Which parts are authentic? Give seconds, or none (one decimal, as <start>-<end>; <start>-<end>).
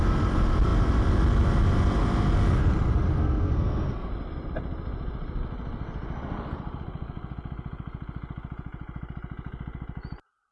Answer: 0.0-3.2; 4.1-10.5